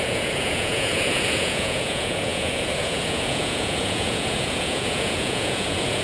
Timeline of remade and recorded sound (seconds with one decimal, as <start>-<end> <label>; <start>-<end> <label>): 0.0-6.0 remade